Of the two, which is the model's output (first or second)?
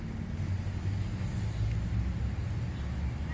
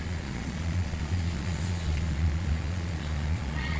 second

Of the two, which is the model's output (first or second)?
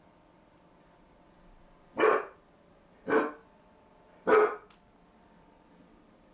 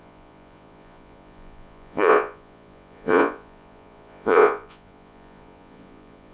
second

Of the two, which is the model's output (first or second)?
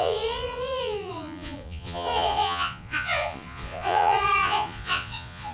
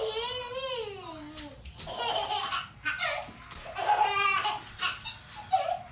first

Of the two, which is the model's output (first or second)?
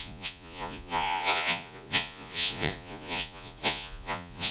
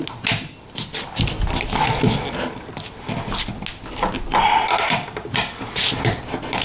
first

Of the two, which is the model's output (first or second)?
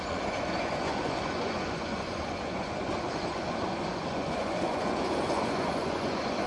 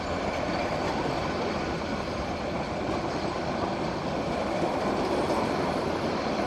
first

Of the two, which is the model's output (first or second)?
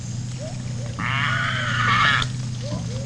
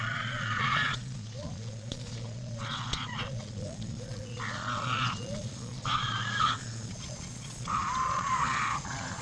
second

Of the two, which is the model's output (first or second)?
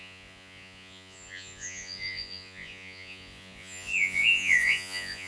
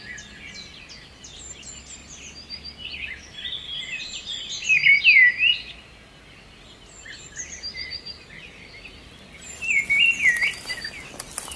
first